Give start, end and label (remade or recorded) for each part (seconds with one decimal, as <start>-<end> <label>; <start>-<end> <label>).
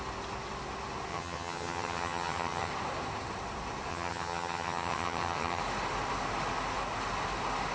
0.0-1.1 recorded; 1.1-2.7 remade; 2.7-3.9 recorded; 3.9-5.6 remade; 5.6-7.7 recorded